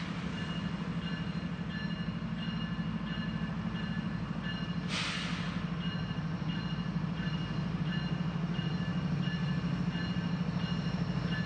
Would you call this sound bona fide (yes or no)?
yes